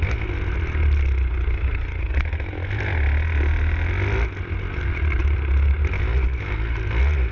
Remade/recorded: recorded